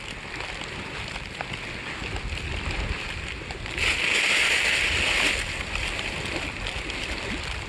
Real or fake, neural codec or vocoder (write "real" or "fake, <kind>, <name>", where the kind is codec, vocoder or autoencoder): real